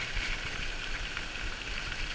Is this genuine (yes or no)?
yes